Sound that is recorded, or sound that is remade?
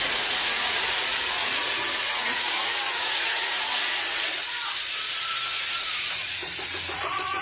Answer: remade